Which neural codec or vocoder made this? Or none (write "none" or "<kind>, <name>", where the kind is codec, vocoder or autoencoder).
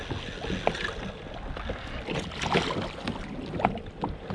none